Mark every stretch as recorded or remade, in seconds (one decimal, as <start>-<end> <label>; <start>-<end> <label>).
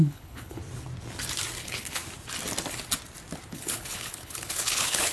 0.0-0.6 remade; 0.6-1.6 recorded; 1.6-2.0 remade; 2.0-3.5 recorded; 3.5-5.1 remade